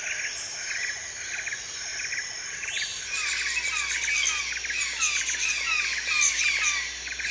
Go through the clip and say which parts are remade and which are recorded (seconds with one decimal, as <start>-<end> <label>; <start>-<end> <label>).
0.0-7.3 recorded